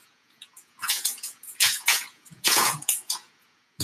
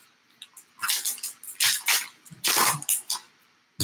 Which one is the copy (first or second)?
first